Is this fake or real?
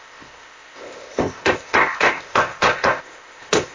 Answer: fake